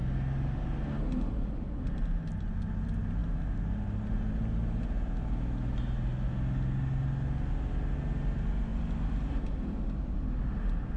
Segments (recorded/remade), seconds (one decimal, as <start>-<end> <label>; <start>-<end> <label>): 0.0-11.0 recorded

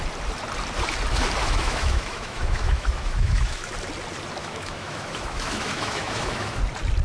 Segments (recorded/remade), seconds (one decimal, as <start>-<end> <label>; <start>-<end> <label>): 0.0-1.4 recorded; 1.4-3.7 remade; 3.7-4.4 recorded; 4.4-6.6 remade; 6.6-7.0 recorded

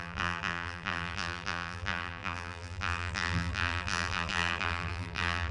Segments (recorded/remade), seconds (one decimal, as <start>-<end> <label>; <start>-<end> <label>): 0.0-5.5 remade

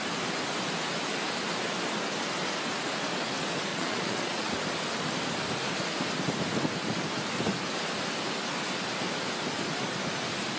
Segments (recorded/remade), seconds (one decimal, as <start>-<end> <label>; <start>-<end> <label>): 0.0-3.7 recorded; 3.7-4.5 remade; 4.5-10.6 recorded

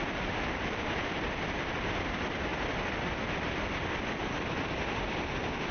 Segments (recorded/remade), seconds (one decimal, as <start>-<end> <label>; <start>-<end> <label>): 0.0-5.7 recorded

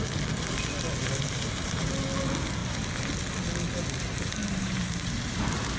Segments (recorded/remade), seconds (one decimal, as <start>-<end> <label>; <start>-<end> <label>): 0.0-1.0 recorded; 1.0-1.9 remade; 1.9-4.4 recorded; 4.4-5.8 remade